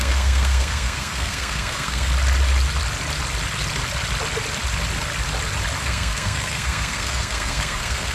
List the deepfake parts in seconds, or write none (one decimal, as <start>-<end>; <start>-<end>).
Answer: 0.0-2.1; 5.8-8.1